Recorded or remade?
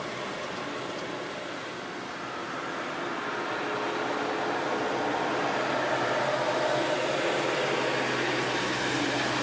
recorded